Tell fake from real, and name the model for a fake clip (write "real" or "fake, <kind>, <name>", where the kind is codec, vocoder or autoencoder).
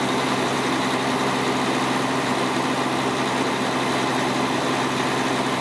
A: real